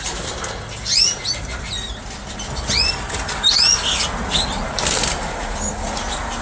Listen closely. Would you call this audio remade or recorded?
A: recorded